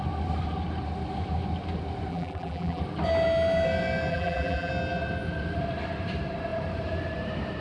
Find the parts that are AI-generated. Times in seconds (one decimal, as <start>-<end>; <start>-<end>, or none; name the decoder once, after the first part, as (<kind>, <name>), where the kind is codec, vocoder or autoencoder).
2.1-2.8 (vocoder, BigVGAN v2); 4.1-4.7